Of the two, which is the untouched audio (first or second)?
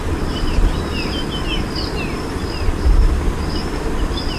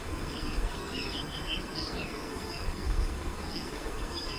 first